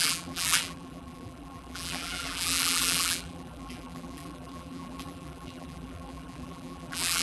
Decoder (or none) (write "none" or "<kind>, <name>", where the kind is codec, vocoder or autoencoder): vocoder, BigVGAN v2